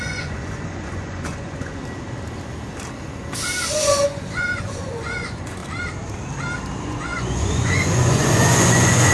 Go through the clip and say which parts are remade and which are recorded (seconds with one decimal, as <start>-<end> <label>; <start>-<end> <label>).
0.0-1.8 remade; 1.8-3.7 recorded; 3.7-5.6 remade; 5.6-6.8 recorded; 6.8-9.1 remade